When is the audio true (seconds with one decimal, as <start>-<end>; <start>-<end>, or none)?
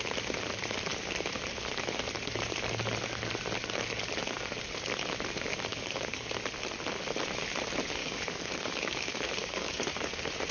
0.0-5.7; 6.3-8.0; 9.9-10.5